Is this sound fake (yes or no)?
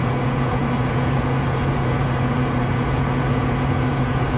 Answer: yes